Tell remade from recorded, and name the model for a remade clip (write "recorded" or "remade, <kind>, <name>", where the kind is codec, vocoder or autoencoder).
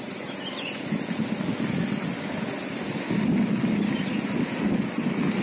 recorded